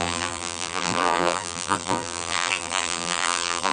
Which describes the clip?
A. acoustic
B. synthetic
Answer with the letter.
B